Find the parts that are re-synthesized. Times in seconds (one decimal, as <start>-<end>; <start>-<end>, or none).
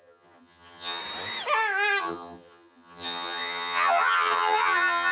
0.0-1.0; 2.0-5.1